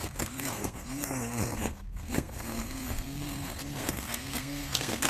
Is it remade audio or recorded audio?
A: remade